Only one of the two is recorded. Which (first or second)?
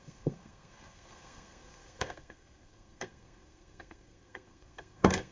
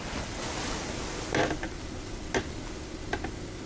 second